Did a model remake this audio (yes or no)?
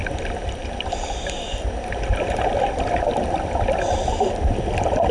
no